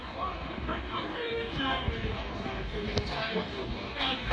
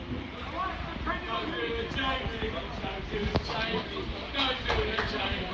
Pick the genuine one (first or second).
second